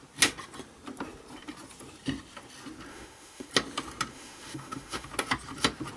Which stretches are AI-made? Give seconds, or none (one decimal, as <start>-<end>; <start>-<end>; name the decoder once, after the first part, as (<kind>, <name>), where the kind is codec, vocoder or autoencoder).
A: 2.9-3.5 (autoencoder, DAC-VAE); 4.1-5.1